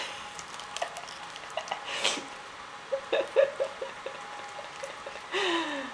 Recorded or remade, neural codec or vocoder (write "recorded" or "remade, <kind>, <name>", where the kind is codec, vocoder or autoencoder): recorded